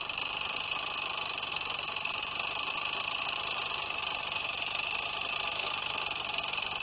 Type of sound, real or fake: real